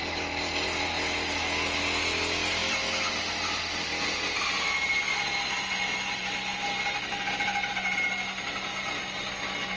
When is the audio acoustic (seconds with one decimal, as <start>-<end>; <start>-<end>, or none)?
0.0-8.7; 9.3-9.8